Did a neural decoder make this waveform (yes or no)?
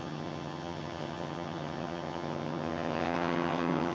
yes